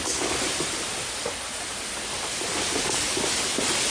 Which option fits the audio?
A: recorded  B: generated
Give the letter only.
A